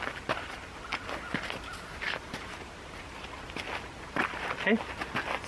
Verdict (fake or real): real